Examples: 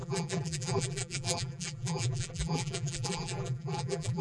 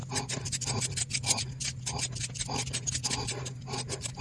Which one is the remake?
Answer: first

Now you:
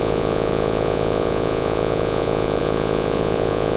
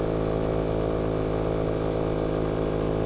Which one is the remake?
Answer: first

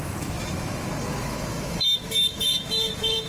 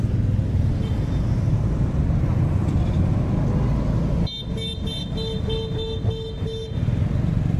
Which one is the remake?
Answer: first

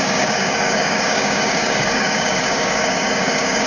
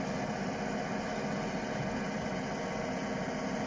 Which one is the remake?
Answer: first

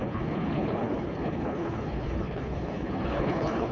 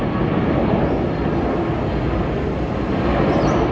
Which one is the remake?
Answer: first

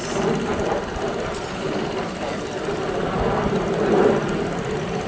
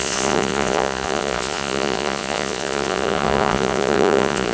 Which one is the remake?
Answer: second